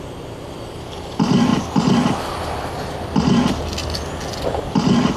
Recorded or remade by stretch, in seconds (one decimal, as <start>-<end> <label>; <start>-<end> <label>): 0.0-5.2 recorded